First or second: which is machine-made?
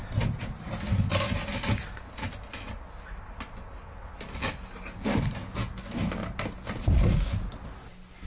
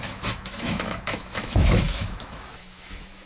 second